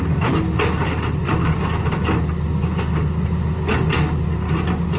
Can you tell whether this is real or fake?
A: real